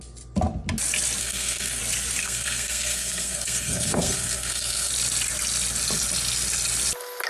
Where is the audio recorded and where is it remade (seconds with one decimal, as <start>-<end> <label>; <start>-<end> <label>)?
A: 0.0-1.2 recorded; 1.2-1.8 remade; 1.8-2.2 recorded; 2.2-4.9 remade; 4.9-7.3 recorded